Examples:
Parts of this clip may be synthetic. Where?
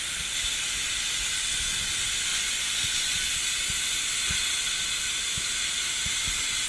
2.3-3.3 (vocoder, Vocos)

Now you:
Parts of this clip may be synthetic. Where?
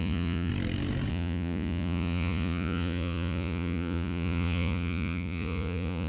0.0-0.5 (vocoder, Vocos); 1.1-6.1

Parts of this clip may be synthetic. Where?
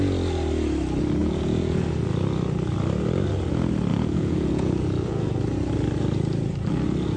1.2-1.8 (vocoder, Vocos); 3.9-5.3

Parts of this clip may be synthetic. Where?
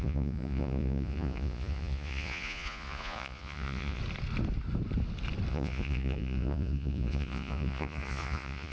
0.0-4.0 (vocoder, Vocos); 5.5-8.7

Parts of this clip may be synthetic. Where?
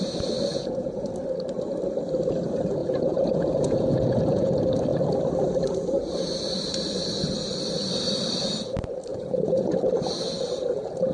0.5-1.1 (vocoder, Vocos); 2.8-4.5; 9.1-9.7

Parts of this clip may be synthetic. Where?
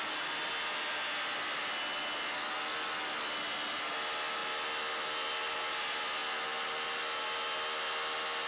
none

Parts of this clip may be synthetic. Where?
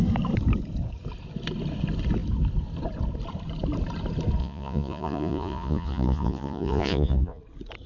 4.4-7.4 (vocoder, Vocos)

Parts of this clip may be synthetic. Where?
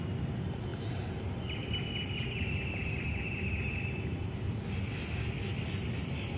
none